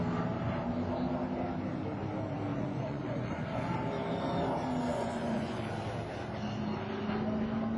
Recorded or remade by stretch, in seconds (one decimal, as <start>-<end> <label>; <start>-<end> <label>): 0.0-2.5 recorded; 2.5-3.7 remade; 3.7-4.9 recorded; 4.9-5.6 remade; 5.6-7.8 recorded